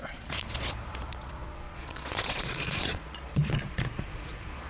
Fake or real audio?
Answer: fake